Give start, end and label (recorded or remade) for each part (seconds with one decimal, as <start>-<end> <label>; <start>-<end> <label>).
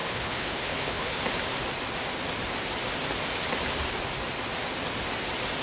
0.0-1.2 remade; 1.2-5.6 recorded